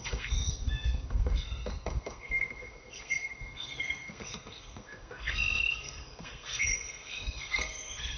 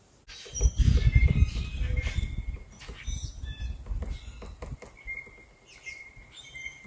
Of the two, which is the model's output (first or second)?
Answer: first